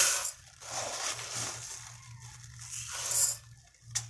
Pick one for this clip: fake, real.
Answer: real